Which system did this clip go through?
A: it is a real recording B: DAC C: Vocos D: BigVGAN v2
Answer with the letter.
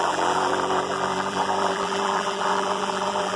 D